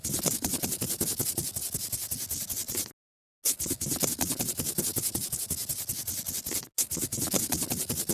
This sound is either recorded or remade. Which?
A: recorded